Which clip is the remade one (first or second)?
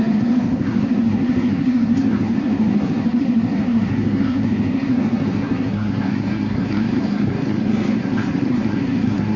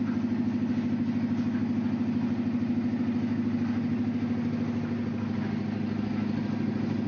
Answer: first